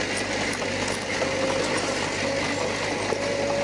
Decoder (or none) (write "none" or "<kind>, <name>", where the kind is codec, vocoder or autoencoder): none